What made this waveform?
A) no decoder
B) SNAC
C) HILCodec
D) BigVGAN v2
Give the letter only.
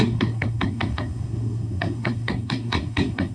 B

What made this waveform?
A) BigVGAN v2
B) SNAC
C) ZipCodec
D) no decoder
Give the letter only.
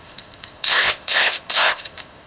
C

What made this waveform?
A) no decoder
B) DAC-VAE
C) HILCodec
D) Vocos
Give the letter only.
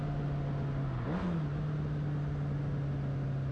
A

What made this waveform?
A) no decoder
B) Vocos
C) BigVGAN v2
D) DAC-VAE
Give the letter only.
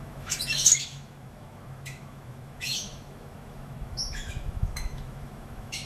D